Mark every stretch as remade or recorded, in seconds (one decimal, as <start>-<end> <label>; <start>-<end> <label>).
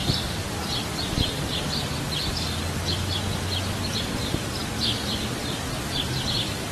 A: 0.0-4.0 recorded; 4.0-4.6 remade; 4.6-5.1 recorded; 5.1-6.7 remade